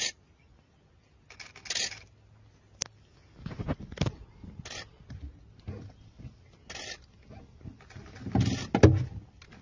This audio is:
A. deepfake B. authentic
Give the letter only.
B